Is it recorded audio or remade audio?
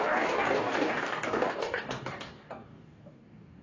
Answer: remade